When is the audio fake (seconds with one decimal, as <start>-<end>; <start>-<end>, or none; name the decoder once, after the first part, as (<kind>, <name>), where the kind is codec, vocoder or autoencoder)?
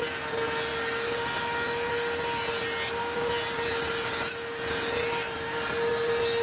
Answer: none